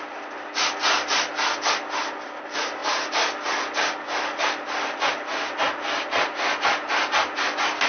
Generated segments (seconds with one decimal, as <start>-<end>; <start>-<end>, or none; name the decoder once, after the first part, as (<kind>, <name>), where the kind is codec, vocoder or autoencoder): none